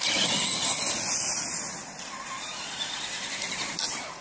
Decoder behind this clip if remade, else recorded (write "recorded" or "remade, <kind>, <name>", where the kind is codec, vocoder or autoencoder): recorded